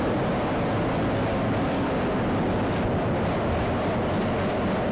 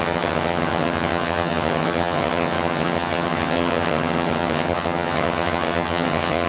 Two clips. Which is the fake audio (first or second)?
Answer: second